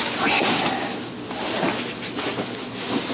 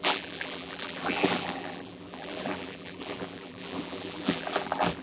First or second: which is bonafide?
first